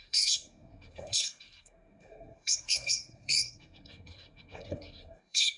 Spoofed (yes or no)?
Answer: yes